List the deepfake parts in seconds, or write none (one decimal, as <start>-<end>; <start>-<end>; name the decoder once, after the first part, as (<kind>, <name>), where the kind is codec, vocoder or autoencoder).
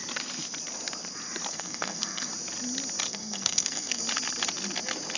1.5-2.3 (codec, SNAC); 3.1-4.0